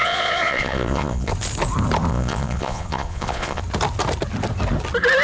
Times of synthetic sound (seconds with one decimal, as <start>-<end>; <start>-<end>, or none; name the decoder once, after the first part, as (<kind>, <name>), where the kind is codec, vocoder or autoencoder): 0.0-1.3 (vocoder, Vocos); 2.1-3.6